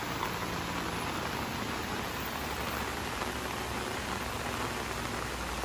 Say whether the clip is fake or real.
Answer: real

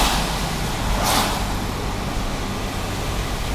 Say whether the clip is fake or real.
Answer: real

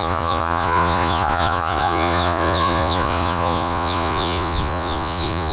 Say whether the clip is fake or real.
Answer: fake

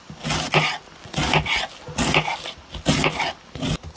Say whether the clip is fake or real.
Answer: real